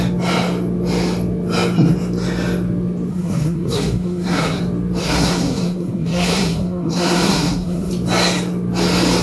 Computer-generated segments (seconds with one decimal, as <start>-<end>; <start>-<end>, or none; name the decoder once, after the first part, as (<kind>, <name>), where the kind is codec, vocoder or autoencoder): 3.1-4.6 (codec, SNAC); 5.0-7.9

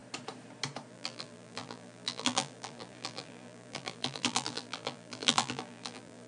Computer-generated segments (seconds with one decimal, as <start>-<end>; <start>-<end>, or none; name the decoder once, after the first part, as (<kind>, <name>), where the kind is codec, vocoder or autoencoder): 0.9-6.3 (vocoder, BigVGAN v2)

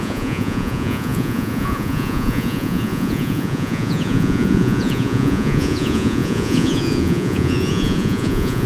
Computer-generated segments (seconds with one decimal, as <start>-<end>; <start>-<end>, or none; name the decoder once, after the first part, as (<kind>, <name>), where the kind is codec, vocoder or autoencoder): 0.0-8.7 (vocoder, Vocos)

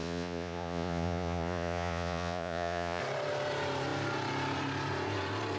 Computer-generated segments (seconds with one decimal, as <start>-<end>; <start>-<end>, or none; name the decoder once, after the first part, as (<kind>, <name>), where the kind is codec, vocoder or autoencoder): 0.0-3.0 (vocoder, Vocos)

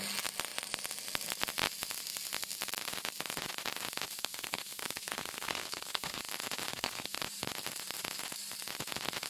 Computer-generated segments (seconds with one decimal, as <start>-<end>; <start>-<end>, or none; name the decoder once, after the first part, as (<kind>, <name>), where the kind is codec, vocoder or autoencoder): 4.2-6.2 (codec, SNAC); 6.7-7.2

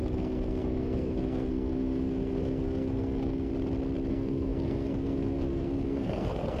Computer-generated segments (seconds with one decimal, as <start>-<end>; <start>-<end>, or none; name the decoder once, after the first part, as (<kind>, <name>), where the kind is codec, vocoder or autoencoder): 0.0-3.5 (codec, SNAC); 4.1-6.6

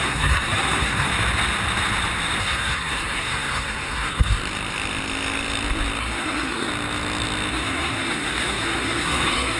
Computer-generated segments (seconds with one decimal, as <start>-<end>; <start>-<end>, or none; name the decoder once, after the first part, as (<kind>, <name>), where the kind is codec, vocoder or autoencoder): 0.0-1.1 (codec, SNAC); 2.4-4.4; 6.0-6.7; 7.5-9.6